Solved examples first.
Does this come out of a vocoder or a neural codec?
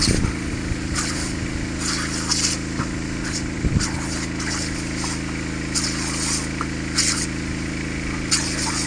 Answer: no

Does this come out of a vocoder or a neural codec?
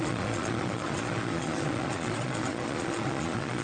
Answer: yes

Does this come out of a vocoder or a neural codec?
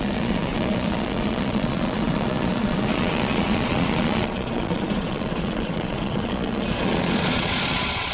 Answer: yes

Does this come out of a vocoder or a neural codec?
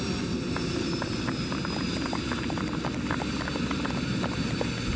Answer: no